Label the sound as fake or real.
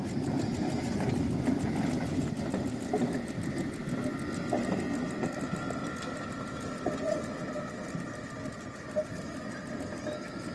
real